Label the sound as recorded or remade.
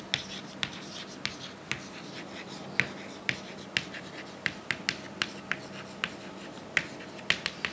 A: recorded